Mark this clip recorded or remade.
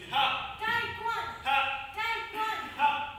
recorded